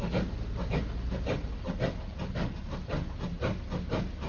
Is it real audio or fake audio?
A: real